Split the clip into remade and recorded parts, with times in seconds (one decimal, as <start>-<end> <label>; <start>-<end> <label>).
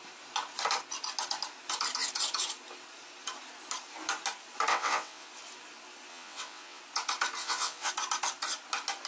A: 0.0-4.7 recorded; 4.7-5.3 remade; 5.3-6.1 recorded; 6.1-6.8 remade; 6.8-7.4 recorded; 7.4-7.9 remade; 7.9-9.1 recorded